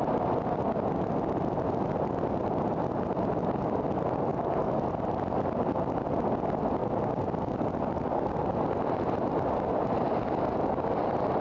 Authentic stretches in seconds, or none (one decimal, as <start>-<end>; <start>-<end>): 0.0-11.4

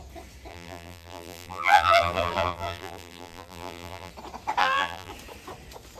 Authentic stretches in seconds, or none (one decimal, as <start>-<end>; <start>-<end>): 0.0-0.5; 4.1-4.6; 5.1-6.0

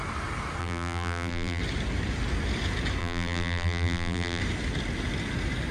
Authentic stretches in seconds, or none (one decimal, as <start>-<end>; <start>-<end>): 0.0-0.6; 1.6-3.0; 4.4-5.7

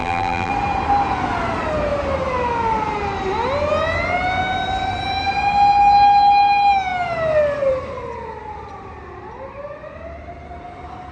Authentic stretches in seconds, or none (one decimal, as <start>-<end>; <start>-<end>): 0.5-11.1

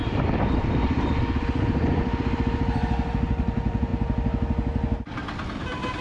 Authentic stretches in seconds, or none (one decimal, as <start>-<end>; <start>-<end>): 3.1-6.0

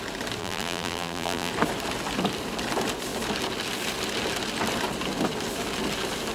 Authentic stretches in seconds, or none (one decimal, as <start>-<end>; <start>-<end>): 0.0-0.4; 1.5-6.3

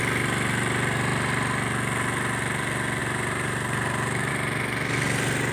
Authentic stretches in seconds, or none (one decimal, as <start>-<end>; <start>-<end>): 0.0-3.0; 4.3-5.5